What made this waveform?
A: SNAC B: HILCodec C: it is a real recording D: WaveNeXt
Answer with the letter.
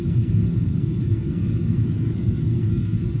A